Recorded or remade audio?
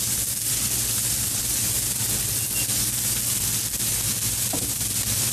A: recorded